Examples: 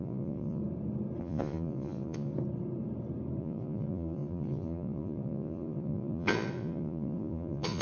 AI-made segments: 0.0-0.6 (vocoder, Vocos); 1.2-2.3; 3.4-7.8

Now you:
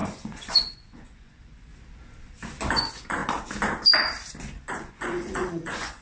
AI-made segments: 0.0-1.7 (vocoder, Vocos); 2.7-3.2; 4.7-6.0

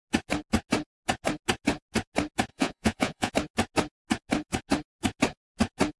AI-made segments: 2.5-3.3 (vocoder, Vocos)

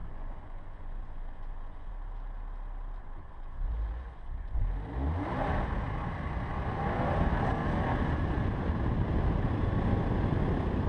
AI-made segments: 0.0-1.9 (vocoder, Vocos); 3.0-4.6

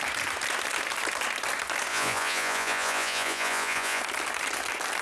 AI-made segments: 1.9-4.0 (vocoder, Vocos)